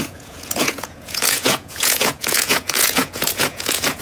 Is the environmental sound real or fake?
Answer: fake